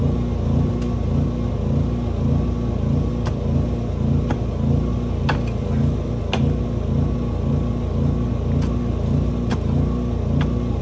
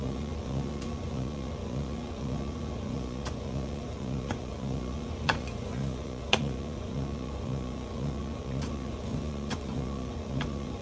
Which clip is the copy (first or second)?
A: second